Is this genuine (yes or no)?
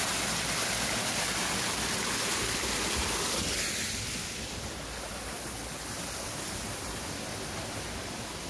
yes